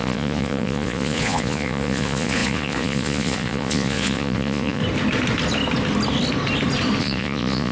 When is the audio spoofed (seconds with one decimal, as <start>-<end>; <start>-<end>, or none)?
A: 0.0-4.8; 7.0-7.7